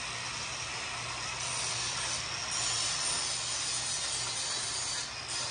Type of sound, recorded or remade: recorded